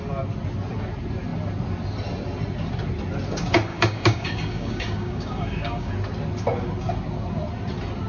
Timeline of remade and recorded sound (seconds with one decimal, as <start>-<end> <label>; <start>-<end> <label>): 0.0-3.7 recorded; 3.7-5.9 remade; 5.9-8.1 recorded